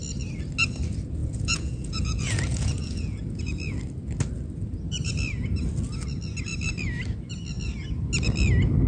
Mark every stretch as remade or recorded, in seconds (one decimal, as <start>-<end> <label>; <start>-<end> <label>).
0.0-1.2 recorded; 1.2-3.4 remade; 3.4-8.9 recorded